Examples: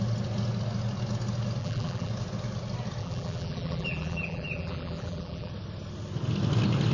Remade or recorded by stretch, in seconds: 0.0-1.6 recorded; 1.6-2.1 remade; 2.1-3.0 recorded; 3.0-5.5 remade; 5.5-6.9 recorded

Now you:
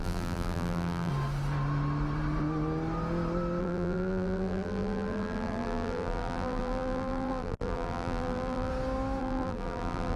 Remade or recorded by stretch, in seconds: 0.0-1.1 remade; 1.1-3.6 recorded; 3.6-8.7 remade; 8.7-9.2 recorded; 9.2-10.2 remade

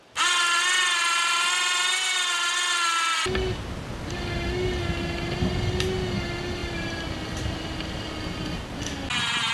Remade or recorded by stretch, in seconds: 0.0-9.5 recorded

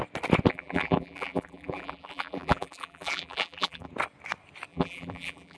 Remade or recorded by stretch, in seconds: 0.0-0.5 recorded; 0.5-3.9 remade; 3.9-4.7 recorded; 4.7-5.6 remade